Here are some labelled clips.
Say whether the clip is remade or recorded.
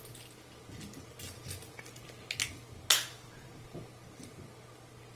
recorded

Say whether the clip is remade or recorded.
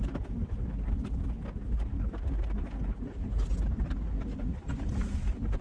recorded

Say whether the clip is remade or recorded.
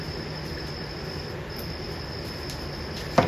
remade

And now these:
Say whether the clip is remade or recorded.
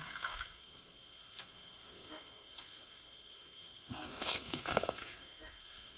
remade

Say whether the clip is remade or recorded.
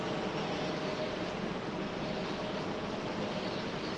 recorded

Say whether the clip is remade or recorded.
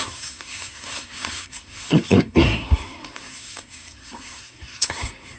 remade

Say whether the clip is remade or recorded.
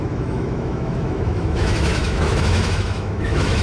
remade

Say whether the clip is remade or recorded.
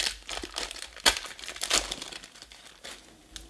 recorded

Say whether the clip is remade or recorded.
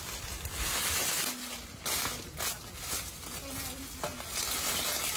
recorded